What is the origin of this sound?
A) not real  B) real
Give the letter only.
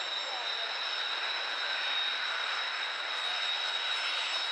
B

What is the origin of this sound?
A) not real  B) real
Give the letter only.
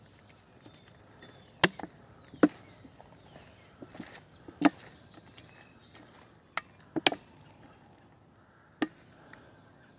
B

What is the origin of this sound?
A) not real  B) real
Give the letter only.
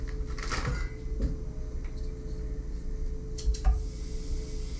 B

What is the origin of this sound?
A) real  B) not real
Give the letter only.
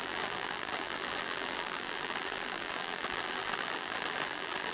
B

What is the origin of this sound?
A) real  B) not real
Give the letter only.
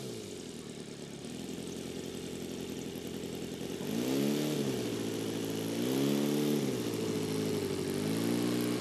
A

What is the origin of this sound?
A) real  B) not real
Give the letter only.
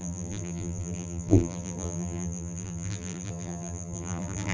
B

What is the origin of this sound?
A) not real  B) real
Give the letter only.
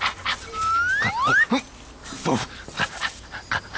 B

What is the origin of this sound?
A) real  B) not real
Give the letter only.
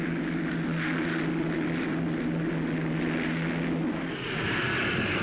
A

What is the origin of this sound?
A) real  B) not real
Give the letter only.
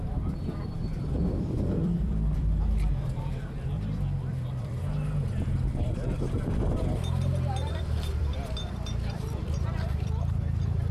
B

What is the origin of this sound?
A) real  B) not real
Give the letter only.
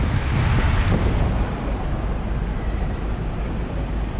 A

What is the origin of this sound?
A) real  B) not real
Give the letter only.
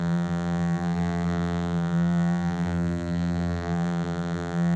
B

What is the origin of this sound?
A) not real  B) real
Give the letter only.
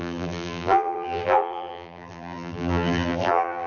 A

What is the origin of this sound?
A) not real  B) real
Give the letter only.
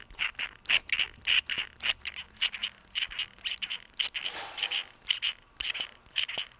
B